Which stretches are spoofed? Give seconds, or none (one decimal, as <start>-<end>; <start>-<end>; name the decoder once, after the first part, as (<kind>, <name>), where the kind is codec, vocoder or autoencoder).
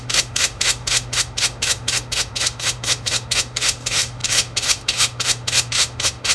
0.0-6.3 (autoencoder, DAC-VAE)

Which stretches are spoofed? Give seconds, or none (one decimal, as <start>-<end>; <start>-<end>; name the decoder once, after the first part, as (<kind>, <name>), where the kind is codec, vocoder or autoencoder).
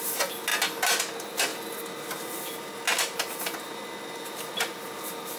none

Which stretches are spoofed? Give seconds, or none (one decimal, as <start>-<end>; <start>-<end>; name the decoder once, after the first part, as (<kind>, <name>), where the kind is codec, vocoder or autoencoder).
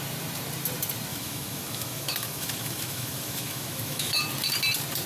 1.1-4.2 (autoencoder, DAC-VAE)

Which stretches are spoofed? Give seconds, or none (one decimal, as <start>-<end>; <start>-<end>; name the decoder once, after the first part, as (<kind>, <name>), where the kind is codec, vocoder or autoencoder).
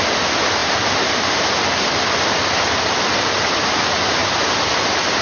none